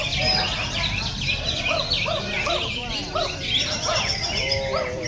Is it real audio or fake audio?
real